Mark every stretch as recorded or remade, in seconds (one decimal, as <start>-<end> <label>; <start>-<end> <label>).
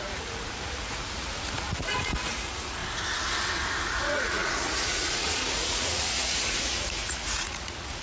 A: 0.0-2.8 remade; 2.8-3.8 recorded; 3.8-8.0 remade